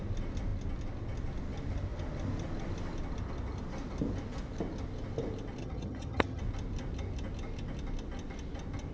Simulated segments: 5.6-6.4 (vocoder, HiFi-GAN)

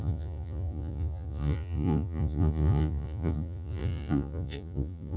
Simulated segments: 0.0-5.2 (vocoder, Vocos)